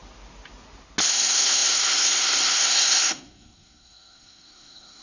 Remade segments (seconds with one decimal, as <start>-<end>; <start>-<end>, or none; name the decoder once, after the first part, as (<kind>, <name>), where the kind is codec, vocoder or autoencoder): 1.1-5.0 (codec, SNAC)

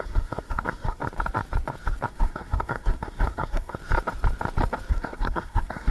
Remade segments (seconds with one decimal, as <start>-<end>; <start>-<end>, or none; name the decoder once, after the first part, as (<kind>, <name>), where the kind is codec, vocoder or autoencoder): 0.0-1.0 (codec, SNAC); 2.1-3.8; 4.9-5.9